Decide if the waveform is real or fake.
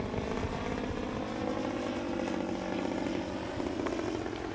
real